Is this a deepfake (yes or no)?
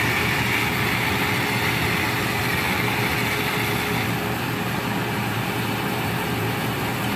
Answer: no